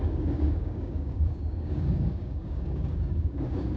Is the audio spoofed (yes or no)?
yes